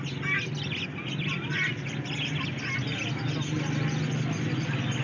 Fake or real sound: real